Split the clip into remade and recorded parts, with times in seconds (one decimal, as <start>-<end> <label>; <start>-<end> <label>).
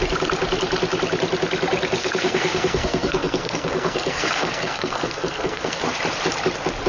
0.0-2.0 recorded; 2.0-5.8 remade; 5.8-6.9 recorded